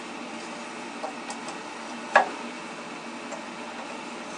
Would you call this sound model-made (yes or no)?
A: no